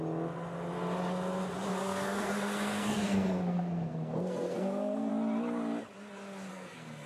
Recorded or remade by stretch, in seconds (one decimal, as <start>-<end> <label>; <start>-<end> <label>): 0.0-1.7 recorded; 1.7-5.1 remade; 5.1-6.5 recorded; 6.5-7.1 remade